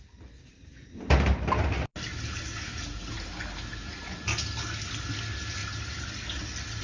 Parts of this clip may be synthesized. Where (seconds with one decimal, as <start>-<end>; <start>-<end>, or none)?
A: none